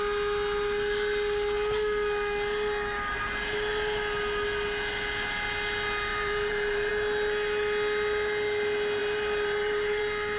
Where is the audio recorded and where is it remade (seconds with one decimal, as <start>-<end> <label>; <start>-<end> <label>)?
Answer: 0.0-6.1 recorded; 6.1-6.9 remade; 6.9-9.0 recorded; 9.0-10.0 remade; 10.0-10.4 recorded